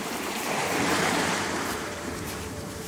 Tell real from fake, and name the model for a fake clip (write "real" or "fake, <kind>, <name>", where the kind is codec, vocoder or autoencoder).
fake, vocoder, BigVGAN v2